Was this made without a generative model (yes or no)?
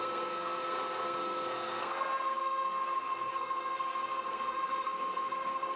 no